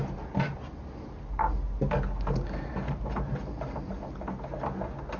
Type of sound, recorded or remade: recorded